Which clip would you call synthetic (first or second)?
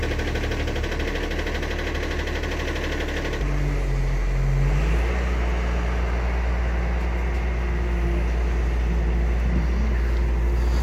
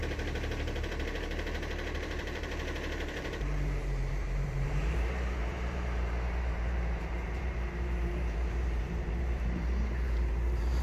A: second